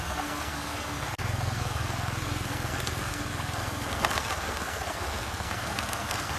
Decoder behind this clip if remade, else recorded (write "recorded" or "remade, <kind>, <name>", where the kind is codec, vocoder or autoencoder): remade, codec, SNAC